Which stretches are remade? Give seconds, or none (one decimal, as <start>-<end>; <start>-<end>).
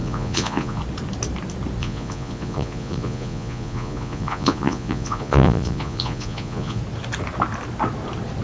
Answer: 0.0-0.8; 1.8-6.8